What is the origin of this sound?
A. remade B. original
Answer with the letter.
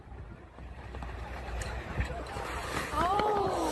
A